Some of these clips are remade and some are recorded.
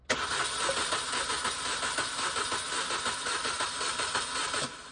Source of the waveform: recorded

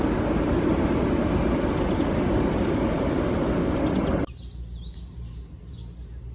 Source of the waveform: recorded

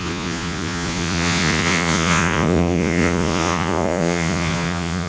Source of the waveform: remade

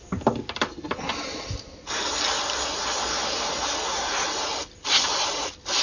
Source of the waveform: recorded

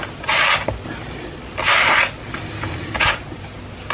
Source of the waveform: recorded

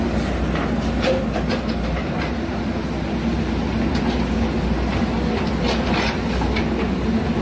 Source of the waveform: recorded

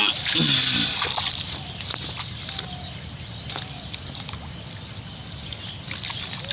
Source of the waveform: recorded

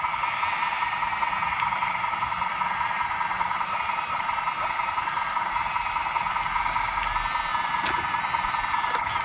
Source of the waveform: recorded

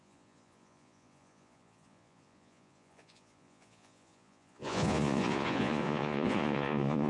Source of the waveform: remade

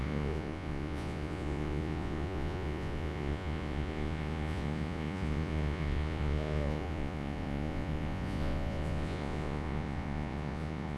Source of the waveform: remade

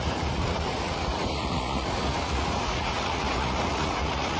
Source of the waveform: remade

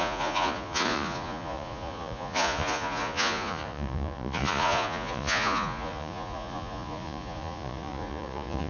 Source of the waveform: remade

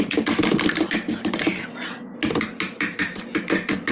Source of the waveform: recorded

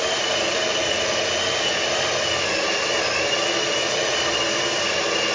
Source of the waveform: recorded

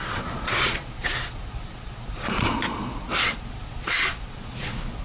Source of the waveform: remade